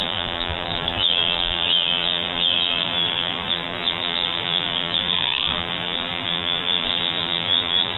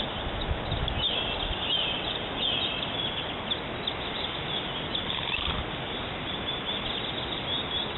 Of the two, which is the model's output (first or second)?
first